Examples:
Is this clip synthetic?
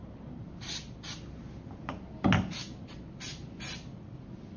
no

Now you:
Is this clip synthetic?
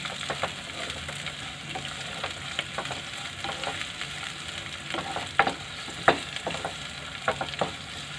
no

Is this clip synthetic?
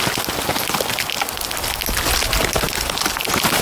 no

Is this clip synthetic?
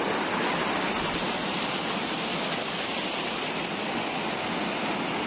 no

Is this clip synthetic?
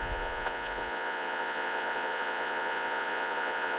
yes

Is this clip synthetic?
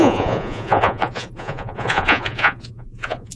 yes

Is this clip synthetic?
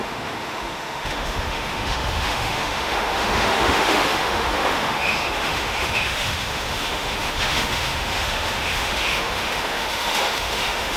yes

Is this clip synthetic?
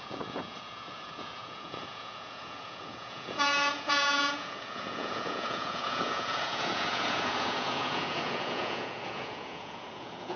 yes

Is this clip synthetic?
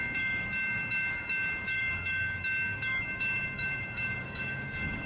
yes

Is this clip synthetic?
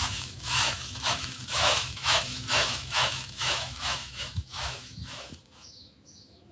yes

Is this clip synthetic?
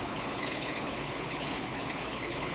yes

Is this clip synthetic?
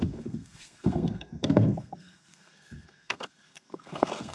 yes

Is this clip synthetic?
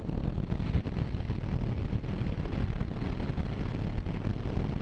no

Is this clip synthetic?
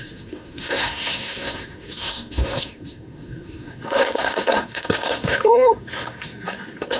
yes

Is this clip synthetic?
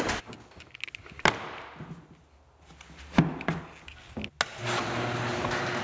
no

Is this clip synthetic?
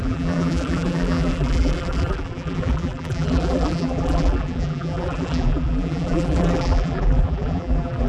yes